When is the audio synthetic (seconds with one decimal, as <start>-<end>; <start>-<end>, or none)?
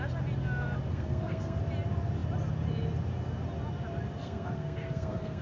0.9-1.6; 4.2-5.4